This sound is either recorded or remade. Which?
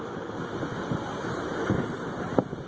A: recorded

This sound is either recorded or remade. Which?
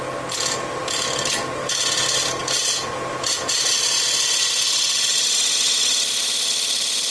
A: recorded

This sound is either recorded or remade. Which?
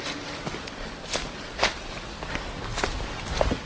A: recorded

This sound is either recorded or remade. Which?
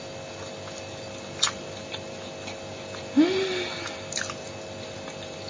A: recorded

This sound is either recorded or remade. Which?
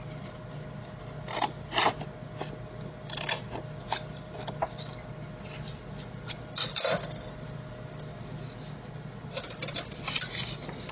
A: recorded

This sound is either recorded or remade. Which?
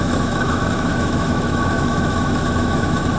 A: remade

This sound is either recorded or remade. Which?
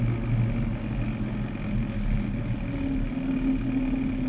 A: recorded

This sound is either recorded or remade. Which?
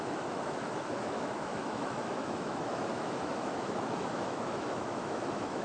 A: remade